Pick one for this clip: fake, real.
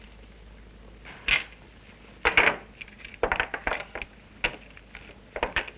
real